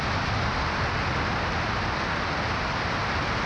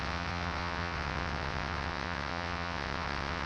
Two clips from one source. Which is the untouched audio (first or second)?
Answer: first